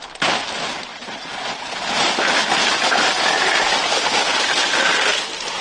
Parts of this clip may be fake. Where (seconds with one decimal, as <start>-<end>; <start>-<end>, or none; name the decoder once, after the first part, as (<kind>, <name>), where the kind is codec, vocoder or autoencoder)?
0.9-1.9 (vocoder, Vocos)